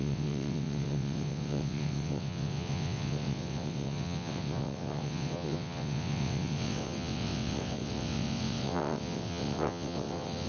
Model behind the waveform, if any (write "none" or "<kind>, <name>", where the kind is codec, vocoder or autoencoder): vocoder, WaveNeXt